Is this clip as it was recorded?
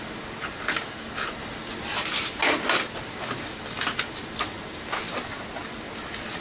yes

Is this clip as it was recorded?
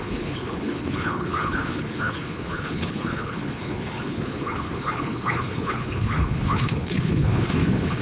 no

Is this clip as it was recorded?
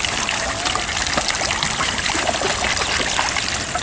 yes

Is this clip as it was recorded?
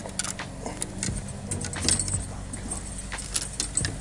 yes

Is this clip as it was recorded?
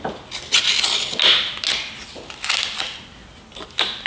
yes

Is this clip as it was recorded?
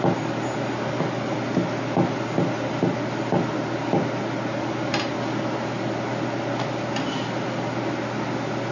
yes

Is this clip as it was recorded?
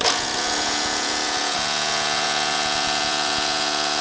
no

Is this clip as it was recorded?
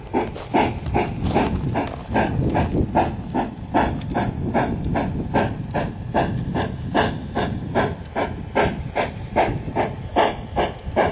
yes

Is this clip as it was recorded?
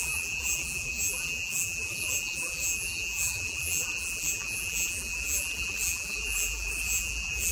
no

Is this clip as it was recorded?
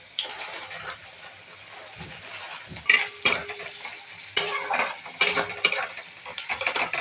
no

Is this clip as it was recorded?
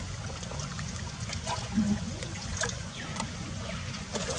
no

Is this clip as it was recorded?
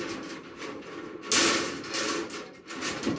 yes